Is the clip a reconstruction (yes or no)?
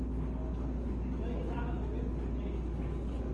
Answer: no